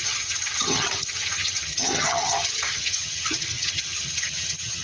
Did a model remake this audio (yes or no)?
yes